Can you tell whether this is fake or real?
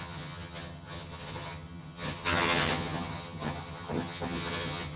fake